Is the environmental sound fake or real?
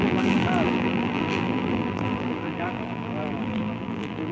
fake